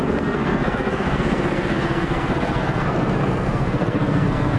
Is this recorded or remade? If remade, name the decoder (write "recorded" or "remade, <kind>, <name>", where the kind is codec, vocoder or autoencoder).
remade, codec, SNAC